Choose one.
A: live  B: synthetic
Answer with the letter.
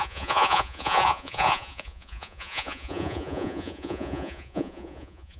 B